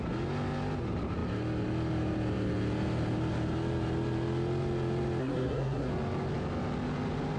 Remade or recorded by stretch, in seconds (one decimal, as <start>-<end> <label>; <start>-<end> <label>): 0.0-5.2 recorded; 5.2-5.9 remade; 5.9-7.4 recorded

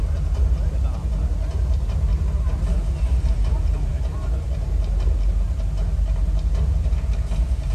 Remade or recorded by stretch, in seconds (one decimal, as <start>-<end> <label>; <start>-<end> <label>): 0.0-7.7 recorded